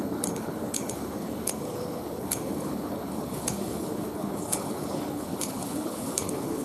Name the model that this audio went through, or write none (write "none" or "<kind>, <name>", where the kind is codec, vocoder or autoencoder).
codec, HILCodec